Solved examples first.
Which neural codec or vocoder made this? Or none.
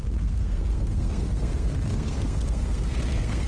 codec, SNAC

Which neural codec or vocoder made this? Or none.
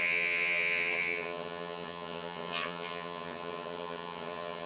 vocoder, HiFi-GAN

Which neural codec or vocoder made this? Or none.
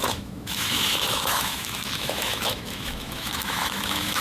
autoencoder, DAC-VAE